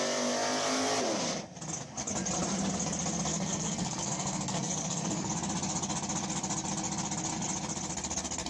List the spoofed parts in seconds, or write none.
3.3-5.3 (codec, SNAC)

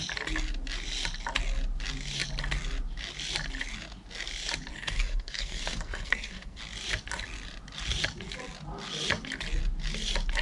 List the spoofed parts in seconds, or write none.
4.7-6.6 (codec, SNAC)

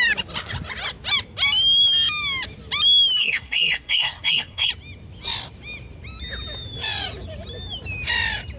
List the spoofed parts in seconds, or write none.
3.2-4.7 (codec, SNAC)

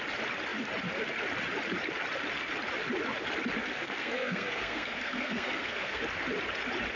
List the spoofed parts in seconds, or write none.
3.6-6.0 (codec, SNAC)